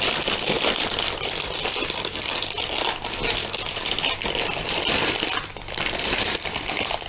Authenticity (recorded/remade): recorded